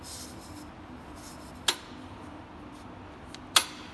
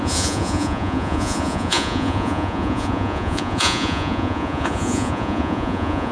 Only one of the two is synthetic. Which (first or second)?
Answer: second